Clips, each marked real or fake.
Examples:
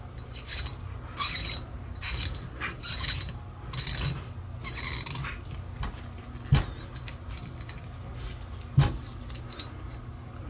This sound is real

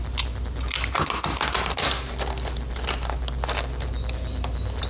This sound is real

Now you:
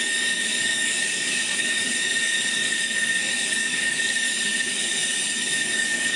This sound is fake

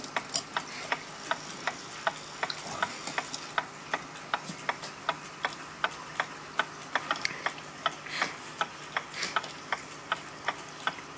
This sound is real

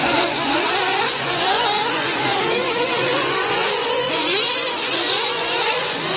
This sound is fake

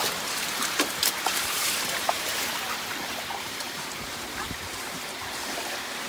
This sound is fake